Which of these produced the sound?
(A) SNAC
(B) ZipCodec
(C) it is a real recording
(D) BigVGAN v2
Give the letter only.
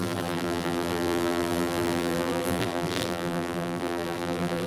D